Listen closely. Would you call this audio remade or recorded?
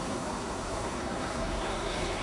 remade